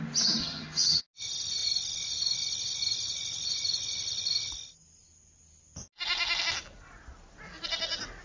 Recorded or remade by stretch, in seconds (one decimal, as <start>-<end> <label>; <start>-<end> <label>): 0.0-0.4 recorded; 0.4-1.0 remade; 1.0-8.2 recorded